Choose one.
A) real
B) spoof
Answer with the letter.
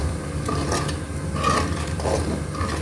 A